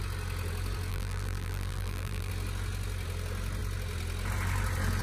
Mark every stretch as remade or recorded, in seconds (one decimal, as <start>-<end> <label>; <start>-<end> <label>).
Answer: 0.0-0.9 recorded; 0.9-2.3 remade; 2.3-5.0 recorded